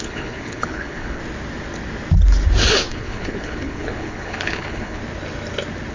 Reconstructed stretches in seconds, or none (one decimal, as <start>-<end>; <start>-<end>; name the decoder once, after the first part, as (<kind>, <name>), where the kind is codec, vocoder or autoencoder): 0.0-1.2 (codec, HILCodec); 2.9-5.0